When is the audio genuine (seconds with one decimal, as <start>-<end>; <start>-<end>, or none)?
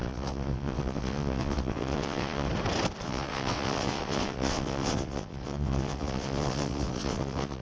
2.5-3.0